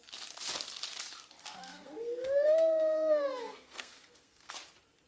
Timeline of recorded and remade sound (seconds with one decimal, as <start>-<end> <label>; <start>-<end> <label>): 0.0-1.4 recorded; 1.4-4.5 remade; 4.5-5.1 recorded